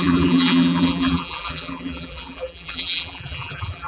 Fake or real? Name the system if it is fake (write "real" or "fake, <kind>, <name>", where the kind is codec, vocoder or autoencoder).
fake, vocoder, BigVGAN v2